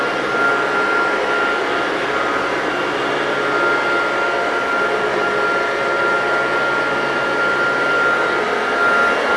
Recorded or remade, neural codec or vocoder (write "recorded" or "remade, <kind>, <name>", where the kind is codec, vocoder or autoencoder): recorded